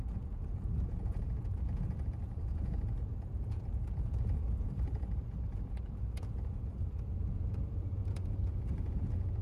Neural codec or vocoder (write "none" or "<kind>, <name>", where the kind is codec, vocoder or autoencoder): vocoder, Vocos